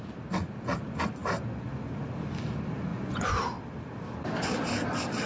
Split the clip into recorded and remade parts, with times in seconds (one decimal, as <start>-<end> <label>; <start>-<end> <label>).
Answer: 0.0-2.9 recorded; 2.9-3.4 remade; 3.4-5.3 recorded